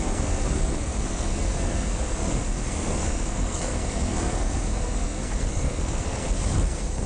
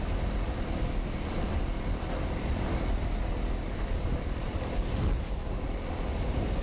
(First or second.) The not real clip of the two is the first